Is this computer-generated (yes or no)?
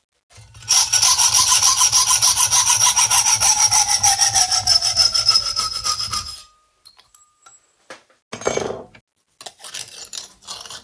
no